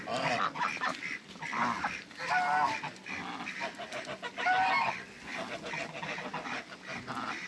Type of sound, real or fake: real